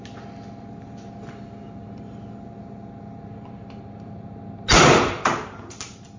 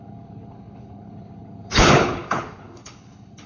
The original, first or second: first